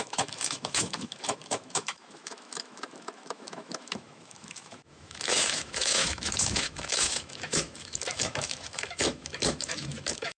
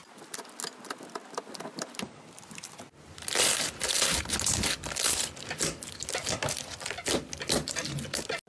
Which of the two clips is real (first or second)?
second